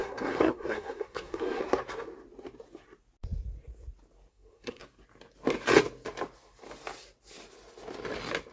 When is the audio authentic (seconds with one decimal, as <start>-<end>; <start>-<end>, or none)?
1.6-4.3; 4.8-8.5